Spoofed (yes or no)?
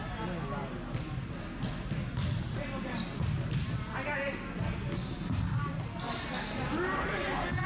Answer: no